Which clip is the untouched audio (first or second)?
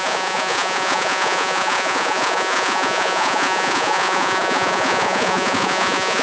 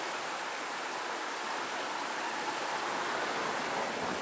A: second